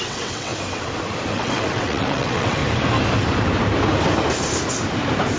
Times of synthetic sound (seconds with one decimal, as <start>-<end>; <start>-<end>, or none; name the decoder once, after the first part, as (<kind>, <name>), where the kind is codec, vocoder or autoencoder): 0.0-0.5 (vocoder, WaveNeXt); 1.3-2.6